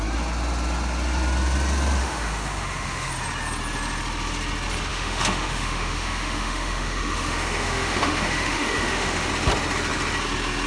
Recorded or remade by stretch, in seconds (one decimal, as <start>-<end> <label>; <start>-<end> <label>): 0.0-2.0 recorded; 2.0-3.1 remade; 3.1-4.9 recorded; 4.9-9.3 remade; 9.3-10.7 recorded